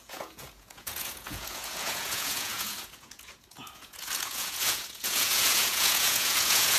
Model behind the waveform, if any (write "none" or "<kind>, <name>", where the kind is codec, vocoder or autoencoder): vocoder, Vocos